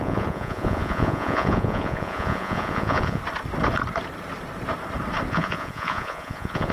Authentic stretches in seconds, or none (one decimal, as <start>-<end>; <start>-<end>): 3.2-5.3